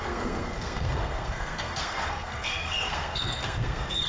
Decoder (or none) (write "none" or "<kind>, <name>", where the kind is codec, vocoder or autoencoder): codec, SNAC